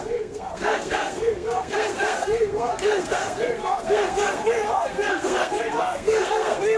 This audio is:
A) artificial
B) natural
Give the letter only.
A